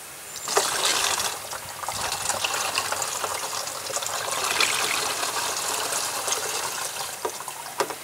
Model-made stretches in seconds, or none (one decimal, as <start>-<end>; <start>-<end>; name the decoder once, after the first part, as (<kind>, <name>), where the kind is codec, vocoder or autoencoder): 0.9-2.8 (vocoder, BigVGAN v2); 3.3-7.6